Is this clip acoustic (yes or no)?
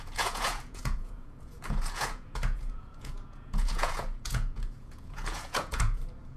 no